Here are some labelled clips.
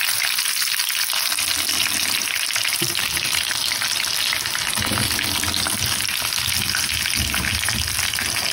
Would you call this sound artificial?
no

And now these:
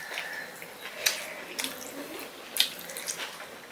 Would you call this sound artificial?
no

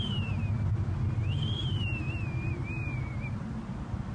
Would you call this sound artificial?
no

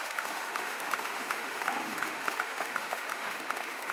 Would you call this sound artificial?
yes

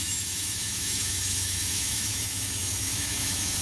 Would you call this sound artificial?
yes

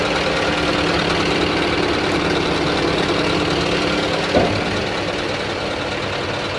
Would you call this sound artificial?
no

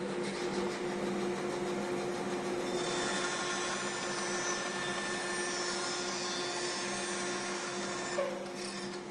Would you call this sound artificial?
no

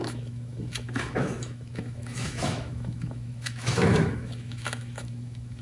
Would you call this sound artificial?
yes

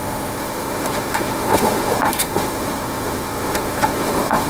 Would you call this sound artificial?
yes